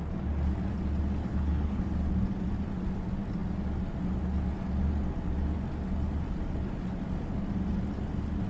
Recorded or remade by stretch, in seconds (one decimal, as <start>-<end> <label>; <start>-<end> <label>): 0.0-1.2 recorded; 1.2-1.8 remade; 1.8-8.5 recorded

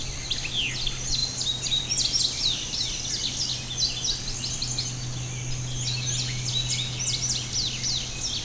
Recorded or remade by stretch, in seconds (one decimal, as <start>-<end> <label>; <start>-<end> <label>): 0.0-8.4 recorded

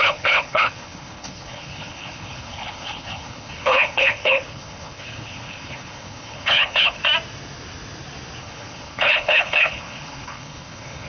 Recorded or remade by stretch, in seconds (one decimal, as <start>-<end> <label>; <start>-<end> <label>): 0.0-7.0 remade; 7.0-8.4 recorded; 8.4-11.1 remade

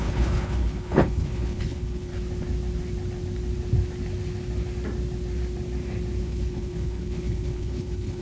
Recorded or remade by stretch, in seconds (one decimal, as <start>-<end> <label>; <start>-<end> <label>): 0.0-2.1 remade; 2.1-6.2 recorded; 6.2-8.2 remade

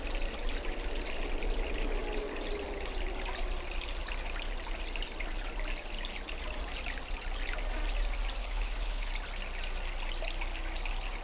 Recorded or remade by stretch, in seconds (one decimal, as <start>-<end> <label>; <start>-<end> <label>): 0.0-8.4 recorded; 8.4-9.1 remade; 9.1-11.2 recorded

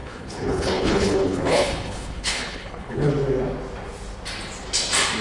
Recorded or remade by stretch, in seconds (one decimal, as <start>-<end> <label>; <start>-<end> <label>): 0.0-3.1 remade; 3.1-5.2 recorded

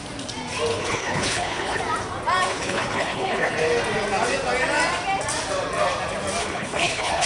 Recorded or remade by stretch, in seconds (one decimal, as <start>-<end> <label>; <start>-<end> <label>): 0.0-0.7 recorded; 0.7-1.8 remade; 1.8-2.5 recorded; 2.5-3.5 remade; 3.5-6.4 recorded; 6.4-7.3 remade